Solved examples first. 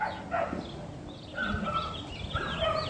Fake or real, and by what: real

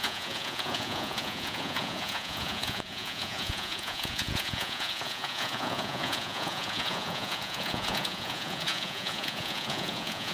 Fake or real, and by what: fake, vocoder, Vocos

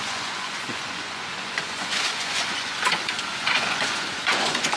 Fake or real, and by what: fake, vocoder, Vocos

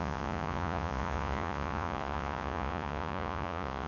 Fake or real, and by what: fake, vocoder, Vocos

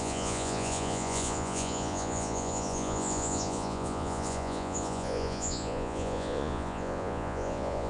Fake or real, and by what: fake, vocoder, Vocos